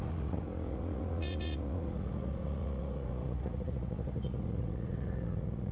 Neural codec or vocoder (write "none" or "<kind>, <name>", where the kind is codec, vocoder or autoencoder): vocoder, Vocos